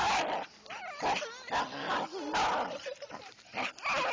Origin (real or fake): real